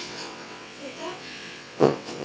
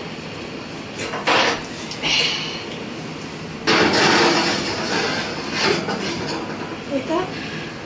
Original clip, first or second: second